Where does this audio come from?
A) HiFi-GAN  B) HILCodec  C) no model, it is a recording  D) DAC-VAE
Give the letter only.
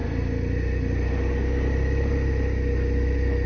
C